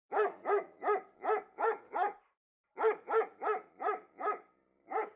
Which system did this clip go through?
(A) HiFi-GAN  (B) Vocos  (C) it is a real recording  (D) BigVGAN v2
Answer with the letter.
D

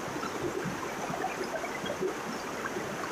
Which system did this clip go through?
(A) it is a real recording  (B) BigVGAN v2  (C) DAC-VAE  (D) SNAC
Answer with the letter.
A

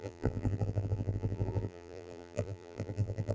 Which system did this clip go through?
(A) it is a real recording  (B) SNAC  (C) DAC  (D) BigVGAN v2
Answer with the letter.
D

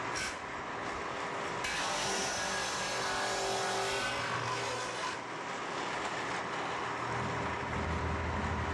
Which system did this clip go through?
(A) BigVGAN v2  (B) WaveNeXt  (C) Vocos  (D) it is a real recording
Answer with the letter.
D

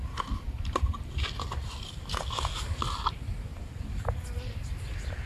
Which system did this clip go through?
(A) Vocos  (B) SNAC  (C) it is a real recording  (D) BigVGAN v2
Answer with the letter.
C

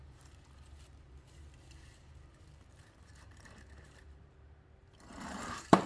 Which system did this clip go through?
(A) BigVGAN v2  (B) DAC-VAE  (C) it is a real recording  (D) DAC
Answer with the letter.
A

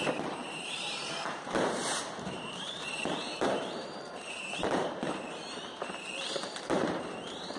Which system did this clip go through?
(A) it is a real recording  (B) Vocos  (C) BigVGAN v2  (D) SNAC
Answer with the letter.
C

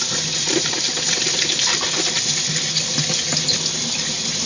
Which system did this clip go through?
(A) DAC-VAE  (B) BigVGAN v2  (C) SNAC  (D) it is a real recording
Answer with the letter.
D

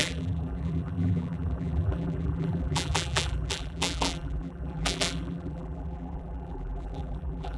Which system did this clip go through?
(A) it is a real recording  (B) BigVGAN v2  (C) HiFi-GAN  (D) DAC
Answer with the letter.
B